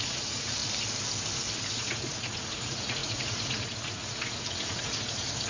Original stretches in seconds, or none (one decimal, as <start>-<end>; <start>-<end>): 0.6-1.7